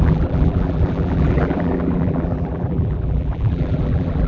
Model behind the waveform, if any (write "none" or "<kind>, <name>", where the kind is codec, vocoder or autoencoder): vocoder, BigVGAN v2